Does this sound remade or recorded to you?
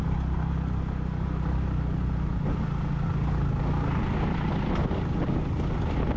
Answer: recorded